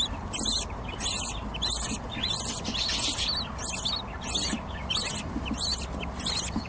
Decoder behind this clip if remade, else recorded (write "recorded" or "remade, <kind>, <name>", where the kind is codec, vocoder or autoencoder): recorded